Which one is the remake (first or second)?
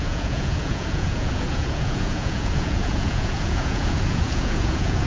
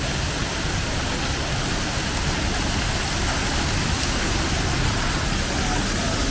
first